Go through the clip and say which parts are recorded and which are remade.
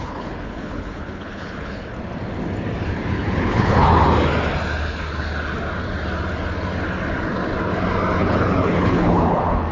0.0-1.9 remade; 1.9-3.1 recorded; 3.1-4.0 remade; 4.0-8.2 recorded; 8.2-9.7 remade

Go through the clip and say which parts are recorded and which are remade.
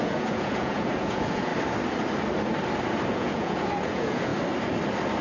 0.0-1.5 remade; 1.5-3.1 recorded; 3.1-4.3 remade; 4.3-5.2 recorded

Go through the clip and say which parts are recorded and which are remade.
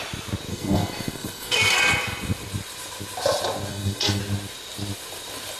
0.0-0.5 recorded; 0.5-1.8 remade; 1.8-3.7 recorded; 3.7-4.2 remade; 4.2-5.6 recorded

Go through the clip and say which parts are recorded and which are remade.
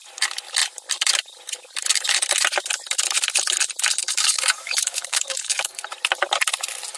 0.0-4.0 recorded; 4.0-5.8 remade; 5.8-7.0 recorded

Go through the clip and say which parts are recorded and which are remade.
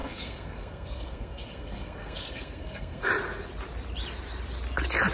0.0-3.1 remade; 3.1-5.1 recorded